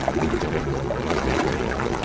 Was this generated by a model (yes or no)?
yes